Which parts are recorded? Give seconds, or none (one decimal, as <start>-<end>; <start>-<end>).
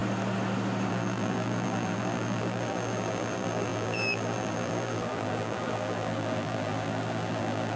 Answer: 0.0-0.9